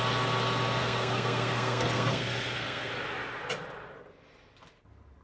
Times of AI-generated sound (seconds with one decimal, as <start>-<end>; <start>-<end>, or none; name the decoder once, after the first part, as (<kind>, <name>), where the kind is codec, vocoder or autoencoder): 0.8-2.9 (codec, SNAC)